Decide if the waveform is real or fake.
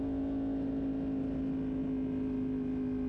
real